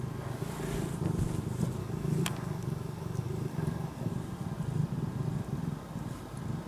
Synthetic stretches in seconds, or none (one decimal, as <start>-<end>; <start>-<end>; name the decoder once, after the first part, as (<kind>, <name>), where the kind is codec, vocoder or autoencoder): 1.8-4.1 (codec, DAC)